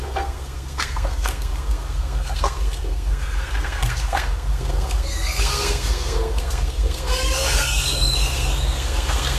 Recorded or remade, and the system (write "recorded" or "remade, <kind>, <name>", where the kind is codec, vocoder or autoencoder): remade, codec, SNAC